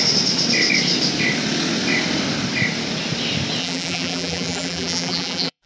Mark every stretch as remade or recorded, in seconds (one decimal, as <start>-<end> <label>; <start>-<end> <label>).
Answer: 0.0-3.6 recorded; 3.6-5.7 remade